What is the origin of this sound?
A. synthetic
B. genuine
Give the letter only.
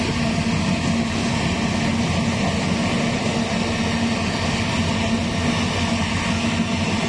B